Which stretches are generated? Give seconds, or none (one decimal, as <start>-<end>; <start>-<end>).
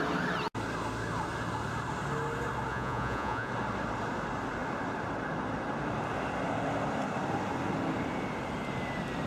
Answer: 2.7-3.5